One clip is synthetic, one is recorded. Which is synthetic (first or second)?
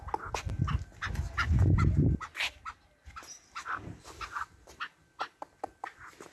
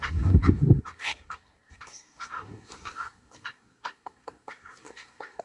second